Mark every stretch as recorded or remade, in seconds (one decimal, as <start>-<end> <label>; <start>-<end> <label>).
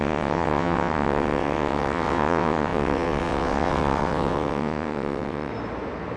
0.0-5.5 remade; 5.5-6.2 recorded